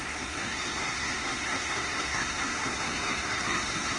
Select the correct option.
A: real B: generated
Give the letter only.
B